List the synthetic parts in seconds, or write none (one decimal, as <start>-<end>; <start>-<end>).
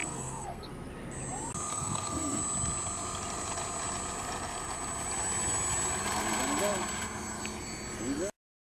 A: 0.0-0.7; 1.7-2.4